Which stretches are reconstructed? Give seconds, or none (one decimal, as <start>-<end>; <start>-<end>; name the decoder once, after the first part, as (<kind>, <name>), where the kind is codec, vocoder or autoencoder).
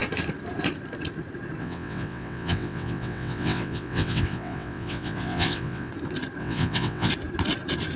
1.6-5.9 (vocoder, WaveNeXt); 6.4-7.1